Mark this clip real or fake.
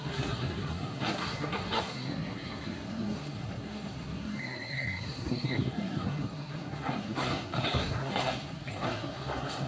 fake